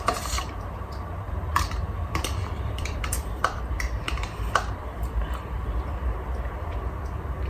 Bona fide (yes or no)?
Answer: no